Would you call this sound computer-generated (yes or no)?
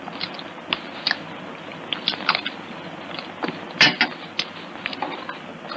no